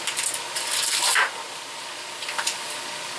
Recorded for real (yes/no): yes